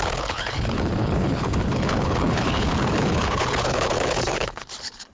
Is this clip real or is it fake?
fake